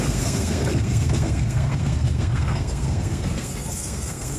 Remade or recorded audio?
remade